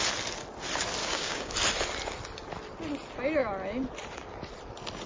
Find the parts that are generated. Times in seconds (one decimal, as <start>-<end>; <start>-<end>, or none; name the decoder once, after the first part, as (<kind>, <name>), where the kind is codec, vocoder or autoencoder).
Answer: 1.0-1.5 (codec, DAC)